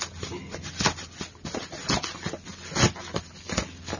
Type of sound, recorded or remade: recorded